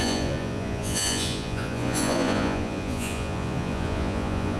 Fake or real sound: fake